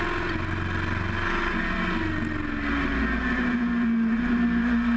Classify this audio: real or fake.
real